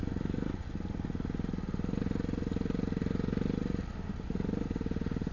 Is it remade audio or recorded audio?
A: recorded